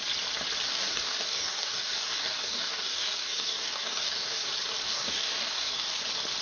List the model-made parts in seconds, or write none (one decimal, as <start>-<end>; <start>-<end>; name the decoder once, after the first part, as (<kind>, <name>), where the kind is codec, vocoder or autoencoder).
0.7-4.5 (codec, DAC); 4.9-6.0